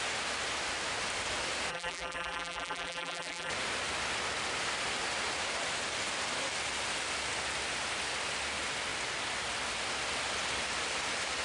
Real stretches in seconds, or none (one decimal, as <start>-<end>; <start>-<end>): 0.0-1.7; 3.5-11.4